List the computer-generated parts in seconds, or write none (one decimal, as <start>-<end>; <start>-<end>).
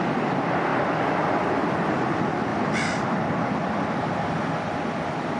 0.7-2.1; 2.5-5.0